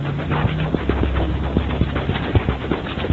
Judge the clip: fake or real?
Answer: real